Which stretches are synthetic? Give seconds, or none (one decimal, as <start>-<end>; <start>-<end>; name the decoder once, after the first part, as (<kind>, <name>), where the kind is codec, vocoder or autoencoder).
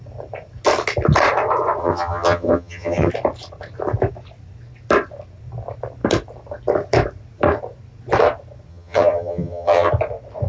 1.8-3.1 (vocoder, HiFi-GAN); 8.7-9.9